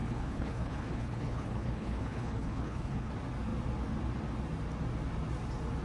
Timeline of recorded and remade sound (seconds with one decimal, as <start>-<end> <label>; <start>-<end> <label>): 0.0-3.1 remade; 3.1-5.8 recorded